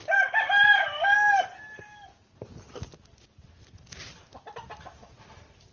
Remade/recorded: recorded